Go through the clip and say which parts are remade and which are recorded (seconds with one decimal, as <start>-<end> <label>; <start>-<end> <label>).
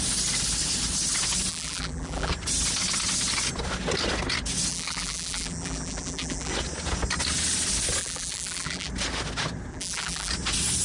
0.0-1.5 recorded; 1.5-2.3 remade; 2.3-4.7 recorded; 4.7-6.5 remade; 6.5-8.0 recorded; 8.0-8.9 remade; 8.9-9.7 recorded; 9.7-10.3 remade; 10.3-10.8 recorded